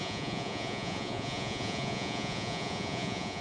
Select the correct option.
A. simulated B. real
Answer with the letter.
A